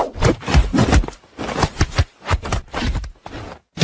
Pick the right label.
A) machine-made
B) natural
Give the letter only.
B